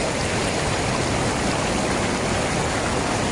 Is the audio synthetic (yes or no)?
no